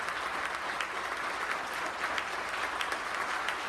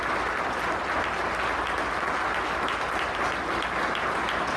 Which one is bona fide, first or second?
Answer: second